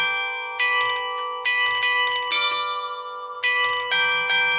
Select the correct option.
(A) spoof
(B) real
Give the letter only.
B